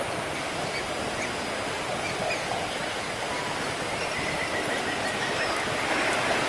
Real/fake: real